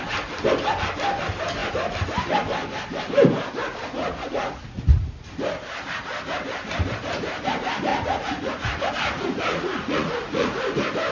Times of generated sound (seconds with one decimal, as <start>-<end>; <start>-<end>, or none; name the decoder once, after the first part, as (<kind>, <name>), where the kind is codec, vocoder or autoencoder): 3.6-4.8 (vocoder, Vocos); 7.9-8.9; 9.5-10.6